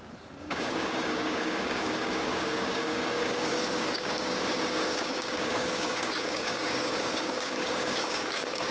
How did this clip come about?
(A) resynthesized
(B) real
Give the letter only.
A